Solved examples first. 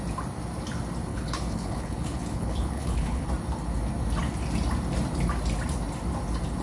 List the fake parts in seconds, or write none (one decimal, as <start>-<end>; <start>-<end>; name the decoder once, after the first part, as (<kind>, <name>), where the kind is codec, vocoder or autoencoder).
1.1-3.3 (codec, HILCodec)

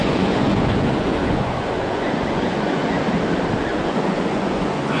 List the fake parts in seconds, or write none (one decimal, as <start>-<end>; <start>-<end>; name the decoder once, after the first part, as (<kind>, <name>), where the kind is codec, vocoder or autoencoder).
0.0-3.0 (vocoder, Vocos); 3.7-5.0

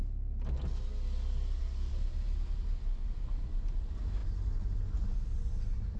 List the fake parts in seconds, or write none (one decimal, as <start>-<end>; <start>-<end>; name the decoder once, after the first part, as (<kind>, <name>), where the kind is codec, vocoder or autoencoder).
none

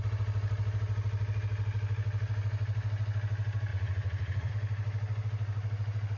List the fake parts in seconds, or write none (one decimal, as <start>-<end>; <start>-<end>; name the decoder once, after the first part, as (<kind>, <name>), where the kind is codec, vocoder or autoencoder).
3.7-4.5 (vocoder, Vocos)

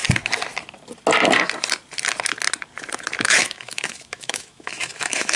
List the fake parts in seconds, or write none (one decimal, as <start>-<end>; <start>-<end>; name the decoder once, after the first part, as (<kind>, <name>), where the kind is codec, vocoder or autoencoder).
3.2-5.4 (autoencoder, DAC-VAE)

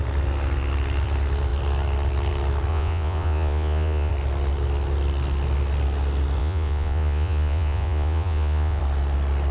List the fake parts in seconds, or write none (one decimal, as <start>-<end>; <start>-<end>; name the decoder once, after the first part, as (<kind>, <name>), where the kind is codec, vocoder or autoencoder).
2.7-4.1 (vocoder, Vocos); 6.4-8.8

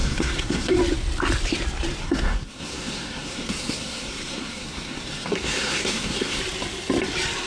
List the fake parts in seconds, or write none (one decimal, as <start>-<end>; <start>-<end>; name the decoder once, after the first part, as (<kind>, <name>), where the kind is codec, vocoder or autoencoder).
0.0-0.8 (codec, SNAC); 2.0-6.4